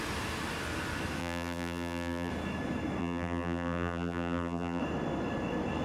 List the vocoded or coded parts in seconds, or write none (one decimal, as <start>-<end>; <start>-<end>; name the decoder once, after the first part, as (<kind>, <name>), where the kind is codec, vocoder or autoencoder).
1.2-2.3 (vocoder, BigVGAN v2); 3.0-4.8